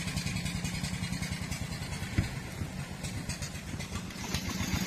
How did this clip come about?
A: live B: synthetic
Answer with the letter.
A